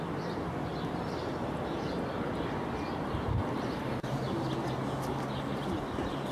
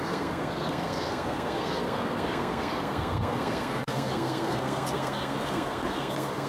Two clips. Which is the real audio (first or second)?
first